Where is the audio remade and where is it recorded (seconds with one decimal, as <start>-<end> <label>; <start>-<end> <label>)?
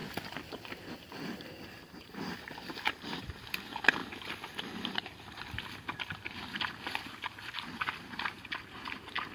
0.0-9.3 recorded